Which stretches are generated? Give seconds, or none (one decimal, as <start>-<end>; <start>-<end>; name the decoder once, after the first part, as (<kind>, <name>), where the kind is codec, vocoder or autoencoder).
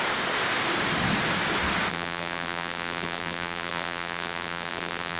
1.9-5.2 (vocoder, BigVGAN v2)